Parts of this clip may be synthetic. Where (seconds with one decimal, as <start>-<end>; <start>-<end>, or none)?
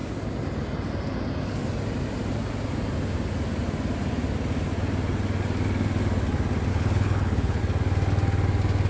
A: 6.7-7.6